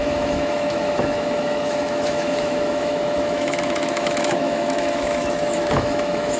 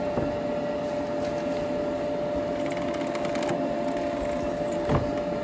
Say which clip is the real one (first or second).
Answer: second